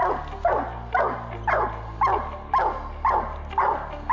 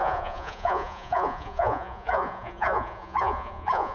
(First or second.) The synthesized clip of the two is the second